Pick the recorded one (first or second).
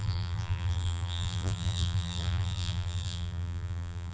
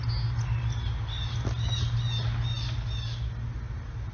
second